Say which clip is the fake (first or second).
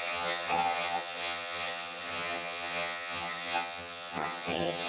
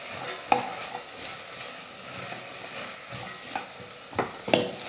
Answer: first